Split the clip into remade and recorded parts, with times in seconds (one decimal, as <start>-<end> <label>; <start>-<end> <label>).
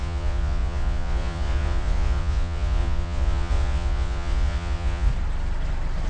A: 0.0-5.1 remade; 5.1-6.1 recorded